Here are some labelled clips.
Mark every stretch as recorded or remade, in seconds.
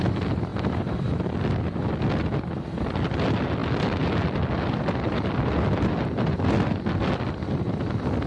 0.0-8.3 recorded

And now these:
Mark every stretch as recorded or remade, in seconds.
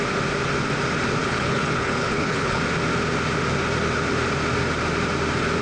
0.0-1.2 recorded; 1.2-2.6 remade; 2.6-5.6 recorded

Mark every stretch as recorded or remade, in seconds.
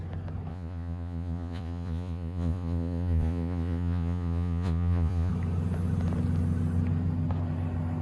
0.0-0.5 recorded; 0.5-5.3 remade; 5.3-8.0 recorded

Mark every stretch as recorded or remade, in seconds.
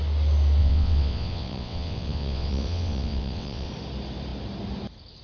0.0-0.6 recorded; 0.6-3.7 remade; 3.7-5.2 recorded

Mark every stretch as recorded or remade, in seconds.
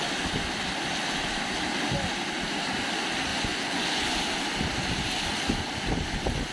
0.0-3.3 recorded; 3.3-4.2 remade; 4.2-6.5 recorded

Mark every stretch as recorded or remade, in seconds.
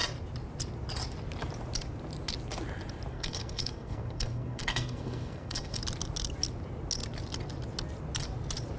0.0-3.1 recorded; 3.1-5.8 remade; 5.8-8.8 recorded